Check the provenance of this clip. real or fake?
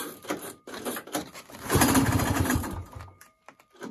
fake